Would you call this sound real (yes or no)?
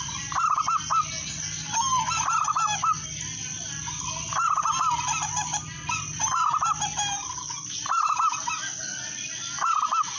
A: yes